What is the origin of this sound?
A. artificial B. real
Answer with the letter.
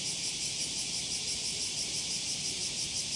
A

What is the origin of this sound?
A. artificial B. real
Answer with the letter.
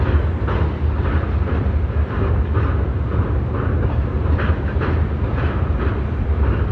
B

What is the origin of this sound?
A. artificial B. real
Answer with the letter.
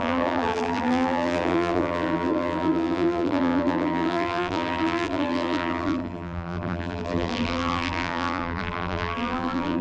A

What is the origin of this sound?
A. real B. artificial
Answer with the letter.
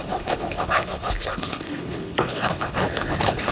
B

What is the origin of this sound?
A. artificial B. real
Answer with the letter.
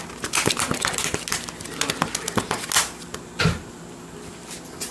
B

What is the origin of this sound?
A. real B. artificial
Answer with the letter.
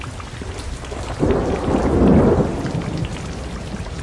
A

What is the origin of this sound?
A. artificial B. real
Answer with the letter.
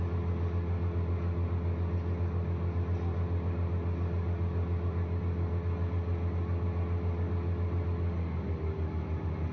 B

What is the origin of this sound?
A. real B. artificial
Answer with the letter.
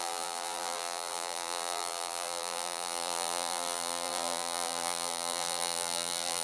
B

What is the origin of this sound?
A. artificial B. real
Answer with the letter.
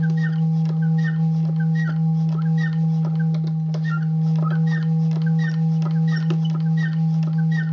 B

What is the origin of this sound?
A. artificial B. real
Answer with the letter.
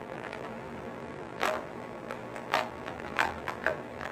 A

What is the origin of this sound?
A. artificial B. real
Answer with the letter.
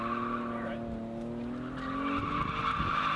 B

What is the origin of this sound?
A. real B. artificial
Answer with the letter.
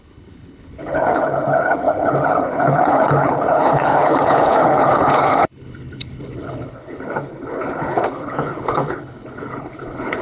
B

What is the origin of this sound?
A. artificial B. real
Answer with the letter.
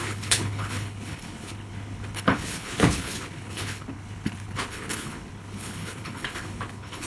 A